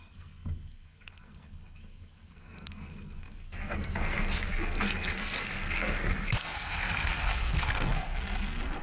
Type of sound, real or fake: fake